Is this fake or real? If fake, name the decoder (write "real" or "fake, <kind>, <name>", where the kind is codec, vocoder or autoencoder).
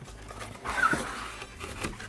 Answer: real